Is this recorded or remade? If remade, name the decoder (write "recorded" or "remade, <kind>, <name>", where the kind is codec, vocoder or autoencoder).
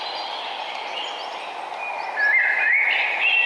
recorded